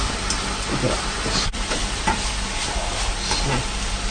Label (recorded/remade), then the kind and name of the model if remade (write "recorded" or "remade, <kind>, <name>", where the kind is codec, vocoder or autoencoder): recorded